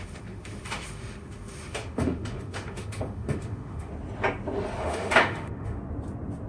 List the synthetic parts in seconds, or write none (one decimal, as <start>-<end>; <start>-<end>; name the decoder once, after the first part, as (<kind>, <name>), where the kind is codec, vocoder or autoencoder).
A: 0.0-3.9 (autoencoder, DAC-VAE); 4.8-5.8